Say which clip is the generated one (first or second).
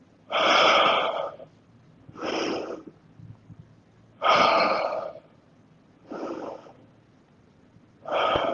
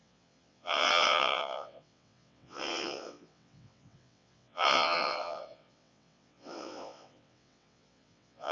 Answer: second